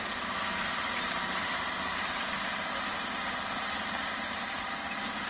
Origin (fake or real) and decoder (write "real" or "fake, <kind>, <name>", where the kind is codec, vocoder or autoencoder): fake, vocoder, BigVGAN v2